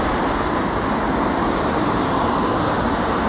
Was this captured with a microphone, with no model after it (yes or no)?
yes